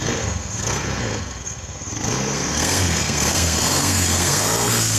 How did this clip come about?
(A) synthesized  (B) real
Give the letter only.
A